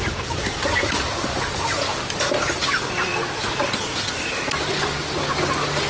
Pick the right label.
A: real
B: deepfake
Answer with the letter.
A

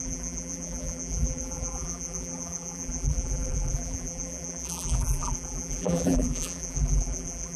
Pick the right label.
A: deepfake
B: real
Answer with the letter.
A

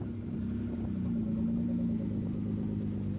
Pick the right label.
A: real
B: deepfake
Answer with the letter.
A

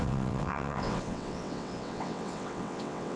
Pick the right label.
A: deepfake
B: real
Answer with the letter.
A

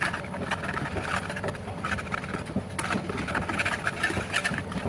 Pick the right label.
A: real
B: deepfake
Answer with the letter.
A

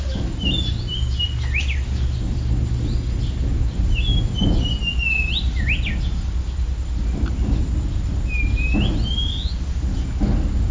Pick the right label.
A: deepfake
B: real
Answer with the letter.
B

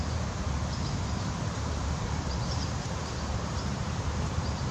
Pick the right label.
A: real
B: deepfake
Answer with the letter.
B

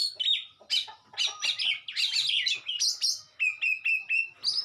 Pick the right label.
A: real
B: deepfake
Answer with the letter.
A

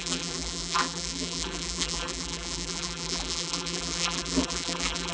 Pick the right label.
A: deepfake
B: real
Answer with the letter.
A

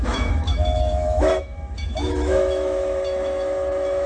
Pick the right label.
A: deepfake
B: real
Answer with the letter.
A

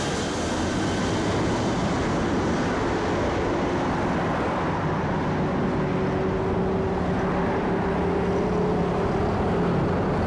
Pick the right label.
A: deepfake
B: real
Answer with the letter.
B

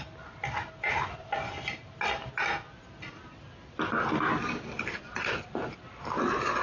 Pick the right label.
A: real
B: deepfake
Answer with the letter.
A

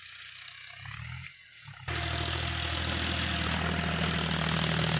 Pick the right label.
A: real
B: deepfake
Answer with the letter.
A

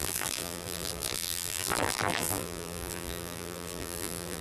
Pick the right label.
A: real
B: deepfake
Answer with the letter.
B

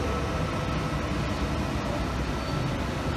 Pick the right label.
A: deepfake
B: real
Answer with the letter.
B